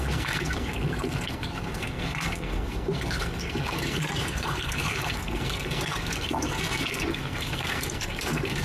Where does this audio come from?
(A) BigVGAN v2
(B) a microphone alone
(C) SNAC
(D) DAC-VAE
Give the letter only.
C